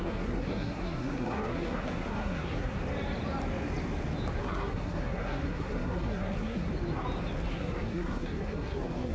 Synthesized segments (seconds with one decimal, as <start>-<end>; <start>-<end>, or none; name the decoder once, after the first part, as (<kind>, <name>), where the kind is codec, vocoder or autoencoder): 0.0-2.8 (codec, SNAC); 4.4-6.7; 7.5-9.1